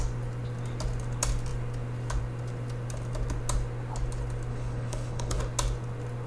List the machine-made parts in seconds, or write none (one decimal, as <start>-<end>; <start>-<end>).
4.5-5.4